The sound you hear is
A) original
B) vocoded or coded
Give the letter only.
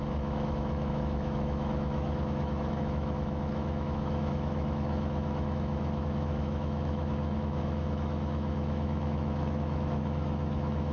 B